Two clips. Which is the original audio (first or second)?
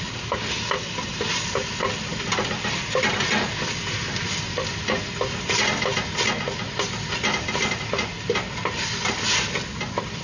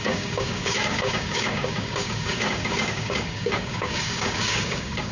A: first